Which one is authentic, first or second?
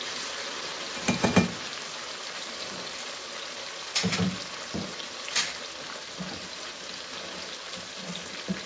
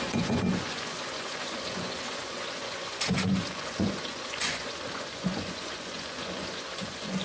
first